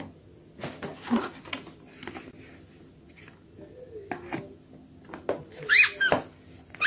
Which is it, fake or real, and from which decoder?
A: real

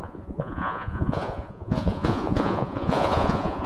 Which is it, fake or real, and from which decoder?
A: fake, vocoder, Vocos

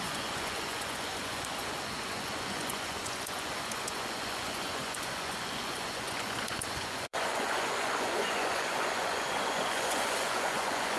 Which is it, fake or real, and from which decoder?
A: fake, vocoder, Vocos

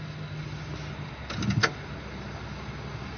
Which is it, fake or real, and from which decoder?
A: real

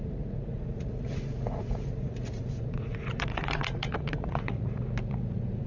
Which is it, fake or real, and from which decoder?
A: fake, vocoder, Vocos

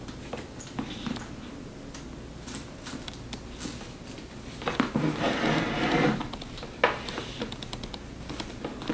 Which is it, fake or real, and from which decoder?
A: real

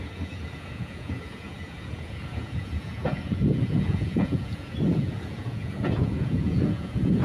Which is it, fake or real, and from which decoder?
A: fake, vocoder, Vocos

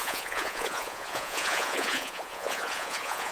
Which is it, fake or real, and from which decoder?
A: fake, vocoder, Vocos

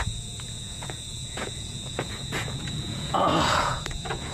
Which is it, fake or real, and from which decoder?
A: fake, vocoder, Vocos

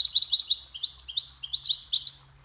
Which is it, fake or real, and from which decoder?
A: real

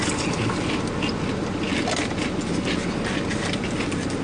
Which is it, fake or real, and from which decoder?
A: real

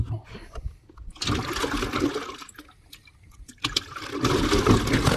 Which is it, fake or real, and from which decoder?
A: real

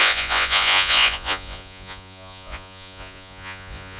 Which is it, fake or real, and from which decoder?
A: fake, vocoder, Vocos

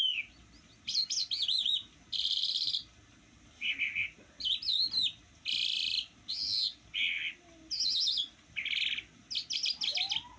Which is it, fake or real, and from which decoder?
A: real